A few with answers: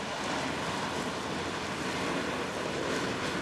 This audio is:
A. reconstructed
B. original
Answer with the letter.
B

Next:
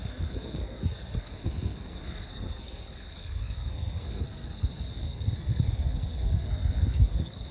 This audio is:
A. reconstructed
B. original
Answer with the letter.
A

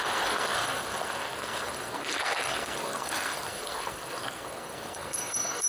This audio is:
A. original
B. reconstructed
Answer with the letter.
B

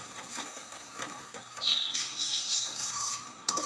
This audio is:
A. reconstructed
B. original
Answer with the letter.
A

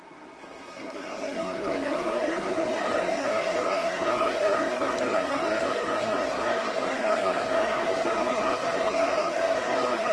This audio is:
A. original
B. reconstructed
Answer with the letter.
B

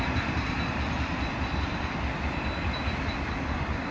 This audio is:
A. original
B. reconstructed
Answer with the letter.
A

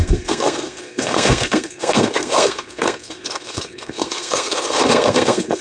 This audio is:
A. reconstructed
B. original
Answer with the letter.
A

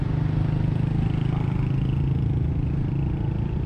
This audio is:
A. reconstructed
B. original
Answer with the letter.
B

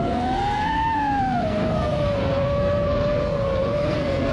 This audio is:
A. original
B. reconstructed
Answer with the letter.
B